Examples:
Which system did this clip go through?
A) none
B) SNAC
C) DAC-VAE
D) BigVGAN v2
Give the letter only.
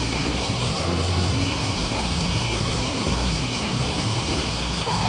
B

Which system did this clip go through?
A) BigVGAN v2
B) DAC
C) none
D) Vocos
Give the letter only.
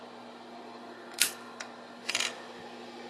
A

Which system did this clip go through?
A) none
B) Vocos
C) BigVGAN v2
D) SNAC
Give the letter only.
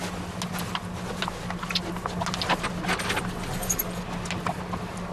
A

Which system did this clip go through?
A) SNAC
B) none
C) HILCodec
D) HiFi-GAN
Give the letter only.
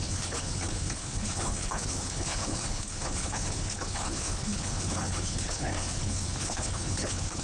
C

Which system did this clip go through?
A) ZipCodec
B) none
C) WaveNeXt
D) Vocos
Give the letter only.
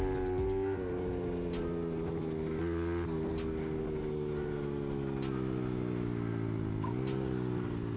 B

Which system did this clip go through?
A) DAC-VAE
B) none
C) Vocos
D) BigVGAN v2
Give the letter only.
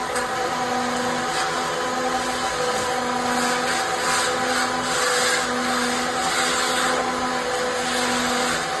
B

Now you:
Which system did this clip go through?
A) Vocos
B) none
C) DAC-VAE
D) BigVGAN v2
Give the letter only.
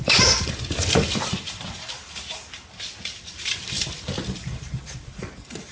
D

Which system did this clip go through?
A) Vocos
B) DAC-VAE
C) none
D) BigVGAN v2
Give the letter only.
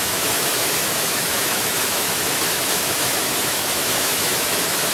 B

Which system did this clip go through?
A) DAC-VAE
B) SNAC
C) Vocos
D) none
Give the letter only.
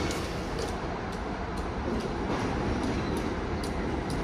D